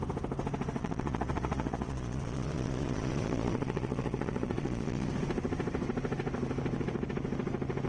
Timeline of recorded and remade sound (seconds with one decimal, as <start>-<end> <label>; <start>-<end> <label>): 0.0-0.8 recorded; 0.8-5.1 remade; 5.1-7.9 recorded